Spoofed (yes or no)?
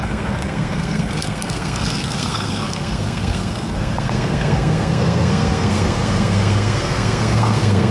yes